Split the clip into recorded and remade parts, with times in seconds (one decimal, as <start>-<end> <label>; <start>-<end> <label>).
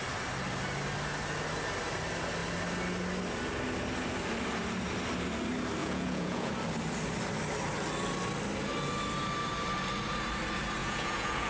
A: 0.0-5.8 recorded; 5.8-6.5 remade; 6.5-10.8 recorded; 10.8-11.5 remade